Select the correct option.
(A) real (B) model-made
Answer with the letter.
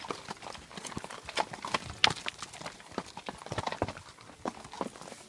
A